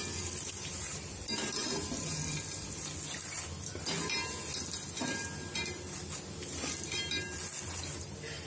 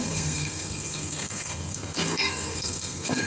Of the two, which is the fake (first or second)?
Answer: second